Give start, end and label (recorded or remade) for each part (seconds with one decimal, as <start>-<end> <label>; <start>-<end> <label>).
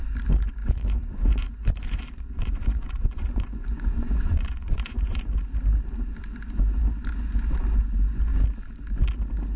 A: 0.0-0.6 recorded; 0.6-5.3 remade; 5.3-9.6 recorded